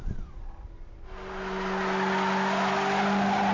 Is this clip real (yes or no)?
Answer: yes